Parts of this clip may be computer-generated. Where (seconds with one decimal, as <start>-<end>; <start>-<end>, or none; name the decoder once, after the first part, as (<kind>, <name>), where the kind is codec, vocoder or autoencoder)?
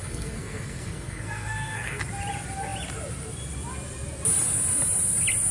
0.0-2.0 (codec, SNAC)